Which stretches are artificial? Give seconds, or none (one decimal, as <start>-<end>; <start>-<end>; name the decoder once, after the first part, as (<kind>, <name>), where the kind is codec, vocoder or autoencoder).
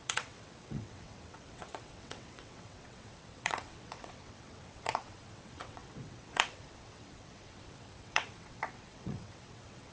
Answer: 0.0-9.9 (vocoder, WaveNeXt)